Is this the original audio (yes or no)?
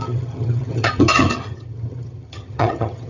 no